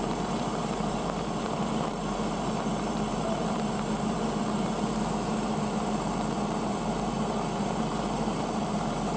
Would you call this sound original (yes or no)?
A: no